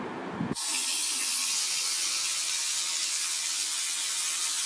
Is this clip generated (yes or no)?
no